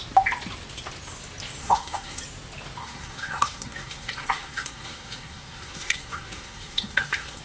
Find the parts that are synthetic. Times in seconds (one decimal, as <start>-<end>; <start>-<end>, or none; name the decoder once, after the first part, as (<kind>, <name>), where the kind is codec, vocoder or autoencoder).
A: 1.6-2.2 (codec, SNAC); 2.8-7.4